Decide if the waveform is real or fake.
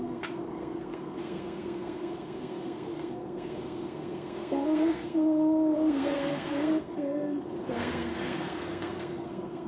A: fake